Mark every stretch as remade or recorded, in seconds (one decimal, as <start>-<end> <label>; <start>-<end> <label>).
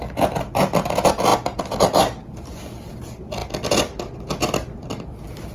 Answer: 0.0-5.5 recorded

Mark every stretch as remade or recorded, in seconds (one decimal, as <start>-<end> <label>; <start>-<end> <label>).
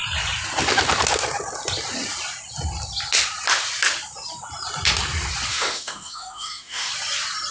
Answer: 0.0-5.5 recorded; 5.5-6.9 remade; 6.9-7.5 recorded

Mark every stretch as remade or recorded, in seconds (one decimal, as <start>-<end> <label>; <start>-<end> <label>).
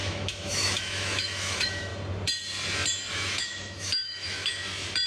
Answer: 0.0-1.9 remade; 1.9-3.1 recorded; 3.1-4.5 remade; 4.5-5.1 recorded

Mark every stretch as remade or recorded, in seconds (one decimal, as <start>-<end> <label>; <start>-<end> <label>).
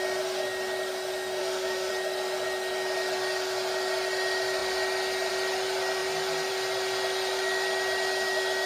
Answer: 0.0-1.4 recorded; 1.4-1.9 remade; 1.9-8.7 recorded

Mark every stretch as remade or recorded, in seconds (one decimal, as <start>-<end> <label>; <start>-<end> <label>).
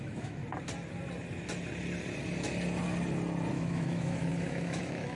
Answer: 0.0-0.4 remade; 0.4-3.5 recorded; 3.5-5.2 remade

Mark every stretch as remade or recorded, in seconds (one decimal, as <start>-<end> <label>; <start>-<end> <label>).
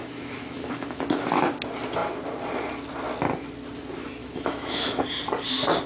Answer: 0.0-1.0 remade; 1.0-4.2 recorded; 4.2-5.0 remade; 5.0-5.9 recorded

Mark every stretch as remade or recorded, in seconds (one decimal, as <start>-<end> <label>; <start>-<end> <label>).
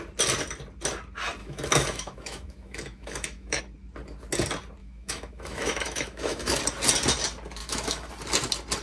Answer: 0.0-1.4 recorded; 1.4-3.6 remade; 3.6-4.8 recorded; 4.8-6.6 remade; 6.6-7.6 recorded; 7.6-8.1 remade; 8.1-8.8 recorded